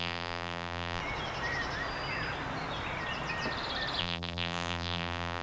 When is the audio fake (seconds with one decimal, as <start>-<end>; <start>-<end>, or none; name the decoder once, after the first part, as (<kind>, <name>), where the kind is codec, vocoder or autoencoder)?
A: 0.0-1.0 (vocoder, BigVGAN v2); 4.0-5.4